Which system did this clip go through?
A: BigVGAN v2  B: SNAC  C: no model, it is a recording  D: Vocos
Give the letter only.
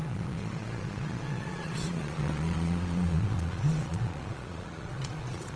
D